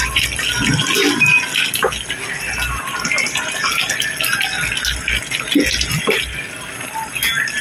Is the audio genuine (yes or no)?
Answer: yes